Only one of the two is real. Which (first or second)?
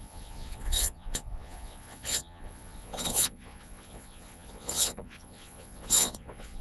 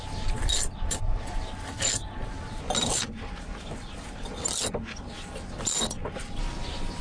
second